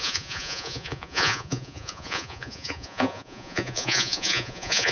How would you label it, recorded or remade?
remade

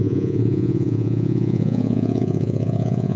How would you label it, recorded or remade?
remade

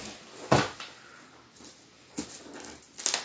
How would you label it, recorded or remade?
recorded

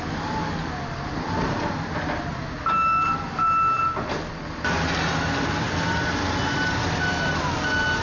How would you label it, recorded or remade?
recorded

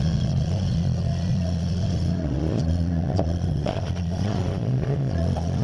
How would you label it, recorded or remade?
remade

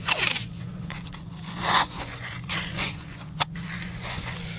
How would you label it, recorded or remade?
remade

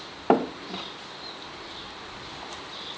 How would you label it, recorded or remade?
recorded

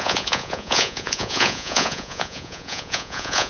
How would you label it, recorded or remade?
remade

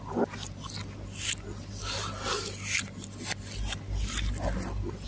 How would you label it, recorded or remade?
recorded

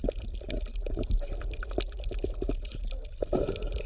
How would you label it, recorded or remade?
recorded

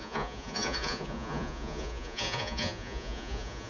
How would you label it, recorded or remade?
remade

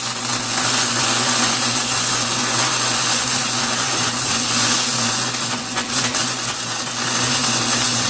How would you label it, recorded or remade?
remade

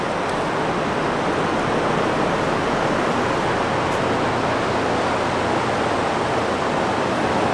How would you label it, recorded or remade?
recorded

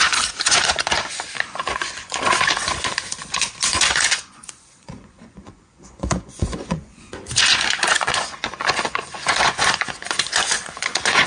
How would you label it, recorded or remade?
remade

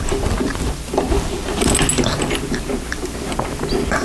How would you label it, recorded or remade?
recorded